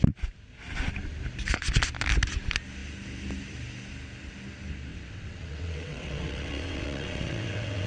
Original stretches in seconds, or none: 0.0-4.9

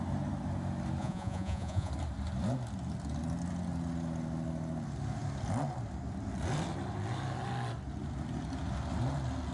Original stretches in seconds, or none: 0.0-1.0; 1.9-9.5

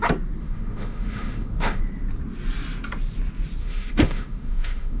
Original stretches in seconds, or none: 0.0-0.4; 1.8-3.6

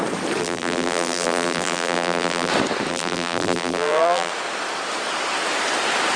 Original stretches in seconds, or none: 0.0-0.4; 2.5-2.9; 4.3-6.2

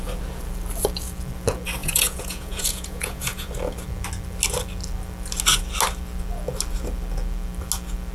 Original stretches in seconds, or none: 0.0-1.8; 3.5-8.1